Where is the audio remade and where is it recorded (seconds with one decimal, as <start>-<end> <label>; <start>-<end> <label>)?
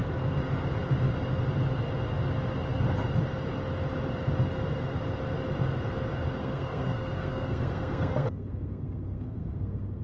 0.0-6.4 recorded; 6.4-10.0 remade